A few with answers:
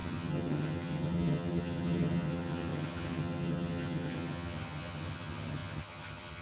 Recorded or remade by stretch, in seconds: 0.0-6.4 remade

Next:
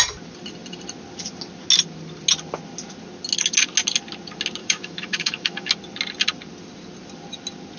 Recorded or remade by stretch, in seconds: 0.0-4.6 recorded; 4.6-5.7 remade; 5.7-7.8 recorded

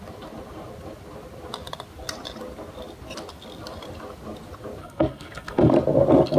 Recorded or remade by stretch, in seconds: 0.0-4.8 recorded; 4.8-5.7 remade; 5.7-6.4 recorded

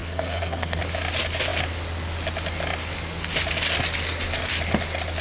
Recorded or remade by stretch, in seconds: 0.0-0.8 remade; 0.8-5.2 recorded

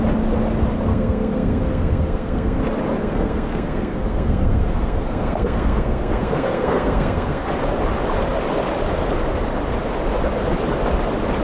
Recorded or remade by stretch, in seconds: 0.0-0.9 recorded; 0.9-2.6 remade; 2.6-3.0 recorded; 3.0-7.5 remade; 7.5-11.4 recorded

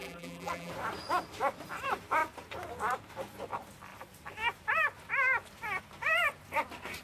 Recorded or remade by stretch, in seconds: 0.0-0.7 remade; 0.7-7.0 recorded

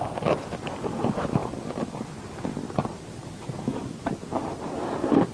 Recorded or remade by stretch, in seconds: 0.0-3.7 recorded; 3.7-5.3 remade